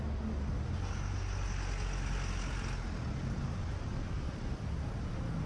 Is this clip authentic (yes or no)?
yes